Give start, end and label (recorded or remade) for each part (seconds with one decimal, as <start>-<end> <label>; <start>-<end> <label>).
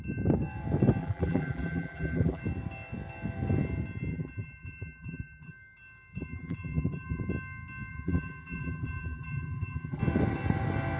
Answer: 0.0-1.0 recorded; 1.0-2.4 remade; 2.4-4.1 recorded; 4.1-5.5 remade; 5.5-6.2 recorded; 6.2-7.2 remade; 7.2-7.9 recorded; 7.9-10.0 remade; 10.0-11.0 recorded